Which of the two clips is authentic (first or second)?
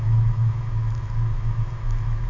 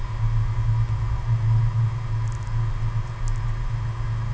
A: second